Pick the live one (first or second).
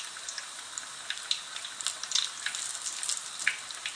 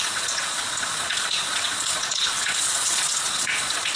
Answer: first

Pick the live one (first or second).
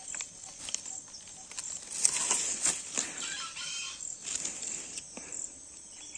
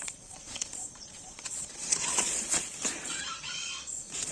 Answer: first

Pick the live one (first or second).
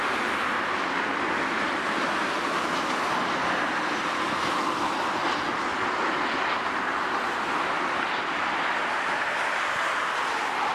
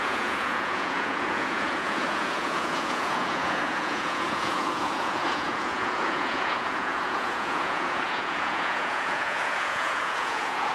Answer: first